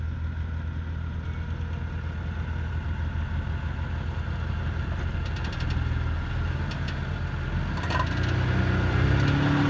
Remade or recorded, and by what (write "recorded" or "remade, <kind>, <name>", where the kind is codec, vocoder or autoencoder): recorded